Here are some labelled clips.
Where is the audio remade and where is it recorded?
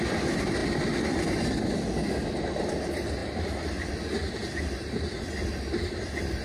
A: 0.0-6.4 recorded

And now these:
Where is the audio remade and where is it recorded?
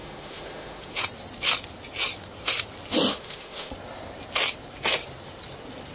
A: 0.0-1.0 remade; 1.0-3.1 recorded; 3.1-3.7 remade; 3.7-5.9 recorded